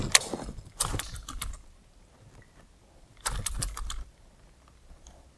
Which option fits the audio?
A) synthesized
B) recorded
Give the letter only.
B